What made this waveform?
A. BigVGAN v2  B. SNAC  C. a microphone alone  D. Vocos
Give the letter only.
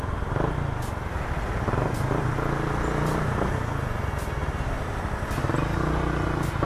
C